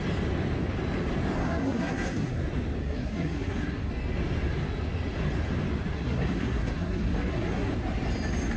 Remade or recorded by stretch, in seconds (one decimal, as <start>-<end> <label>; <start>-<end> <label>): 0.0-1.4 recorded; 1.4-2.4 remade; 2.4-2.8 recorded; 2.8-3.9 remade; 3.9-5.9 recorded; 5.9-7.7 remade; 7.7-8.6 recorded